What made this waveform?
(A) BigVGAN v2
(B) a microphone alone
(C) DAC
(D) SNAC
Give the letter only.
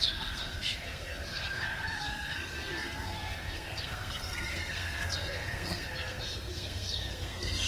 D